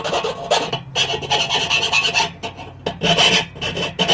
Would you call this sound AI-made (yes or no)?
no